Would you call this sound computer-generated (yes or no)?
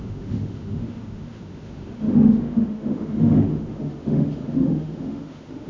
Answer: yes